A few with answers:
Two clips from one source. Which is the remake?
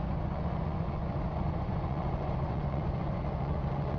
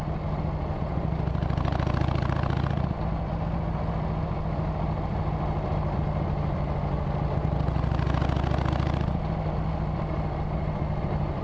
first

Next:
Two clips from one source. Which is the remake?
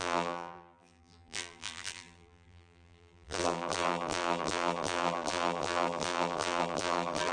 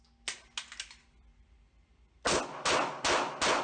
first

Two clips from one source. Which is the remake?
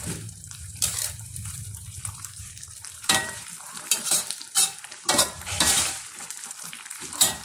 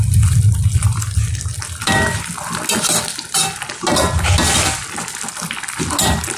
first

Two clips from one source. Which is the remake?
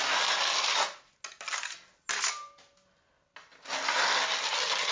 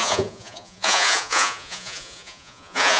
second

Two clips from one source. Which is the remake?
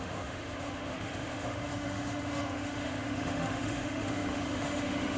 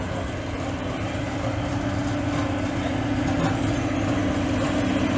first